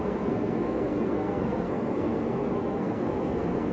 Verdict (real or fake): fake